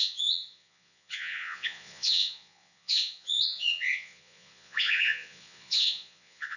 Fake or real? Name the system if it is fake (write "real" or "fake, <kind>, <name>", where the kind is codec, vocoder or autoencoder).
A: fake, vocoder, Vocos